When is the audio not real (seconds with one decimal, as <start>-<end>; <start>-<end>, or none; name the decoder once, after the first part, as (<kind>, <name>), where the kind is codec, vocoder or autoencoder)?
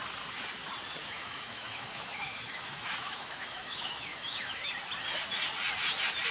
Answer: 1.0-4.7 (autoencoder, DAC-VAE)